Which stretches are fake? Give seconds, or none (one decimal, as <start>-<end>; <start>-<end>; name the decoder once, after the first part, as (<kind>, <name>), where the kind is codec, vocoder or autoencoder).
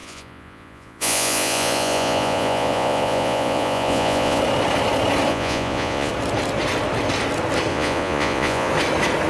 0.0-4.4 (vocoder, Vocos); 5.3-6.1; 7.7-8.7